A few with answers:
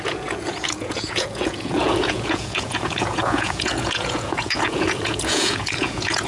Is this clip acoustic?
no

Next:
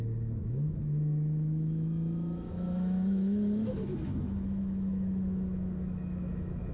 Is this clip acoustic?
no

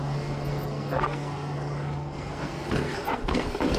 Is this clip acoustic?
no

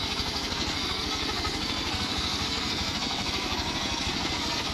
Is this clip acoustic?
no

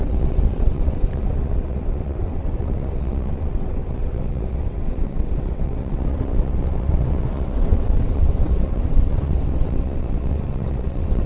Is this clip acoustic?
no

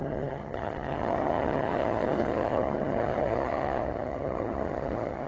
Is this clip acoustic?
no